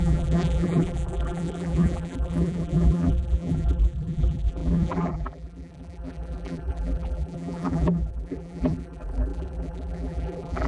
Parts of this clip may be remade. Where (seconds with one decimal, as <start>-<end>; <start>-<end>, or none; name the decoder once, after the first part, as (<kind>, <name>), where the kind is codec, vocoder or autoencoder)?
0.0-10.7 (vocoder, BigVGAN v2)